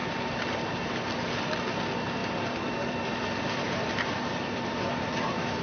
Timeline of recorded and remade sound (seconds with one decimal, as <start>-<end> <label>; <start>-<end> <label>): 0.0-1.2 remade; 1.2-2.2 recorded; 2.2-5.6 remade